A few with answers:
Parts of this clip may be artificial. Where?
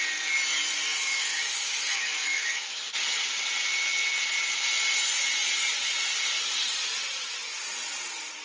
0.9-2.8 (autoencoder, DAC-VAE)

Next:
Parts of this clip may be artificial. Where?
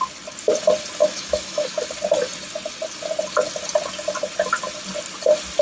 1.0-1.8 (autoencoder, DAC-VAE)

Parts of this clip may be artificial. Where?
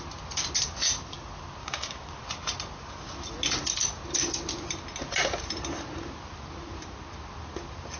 1.6-2.1 (codec, DAC)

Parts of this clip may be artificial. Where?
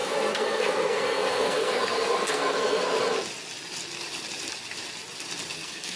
0.0-3.0 (codec, SNAC); 5.5-6.0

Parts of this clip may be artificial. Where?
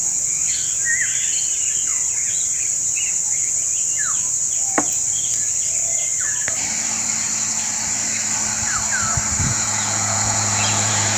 9.5-11.2 (vocoder, Vocos)